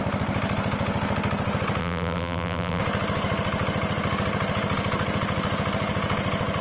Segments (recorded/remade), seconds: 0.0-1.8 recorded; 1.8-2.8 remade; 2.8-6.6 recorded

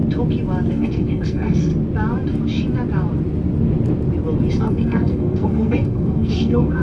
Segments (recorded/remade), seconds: 0.0-0.7 recorded; 0.7-1.7 remade; 1.7-4.6 recorded; 4.6-6.8 remade

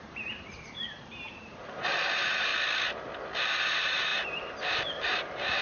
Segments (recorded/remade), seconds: 0.0-2.5 remade; 2.5-3.5 recorded; 3.5-5.6 remade

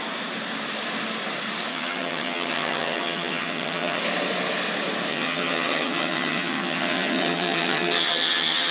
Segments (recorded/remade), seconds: 0.0-1.7 recorded; 1.7-4.0 remade; 4.0-5.1 recorded; 5.1-8.7 remade

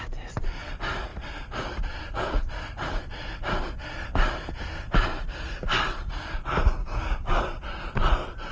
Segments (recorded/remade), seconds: 0.0-6.8 recorded; 6.8-7.4 remade; 7.4-8.5 recorded

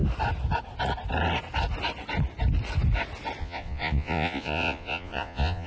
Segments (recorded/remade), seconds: 0.0-3.4 recorded; 3.4-5.7 remade

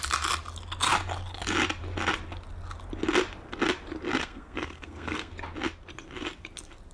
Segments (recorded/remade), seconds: 0.0-4.2 recorded; 4.2-5.3 remade; 5.3-6.9 recorded

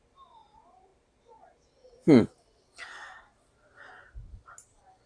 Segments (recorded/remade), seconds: 0.0-5.1 recorded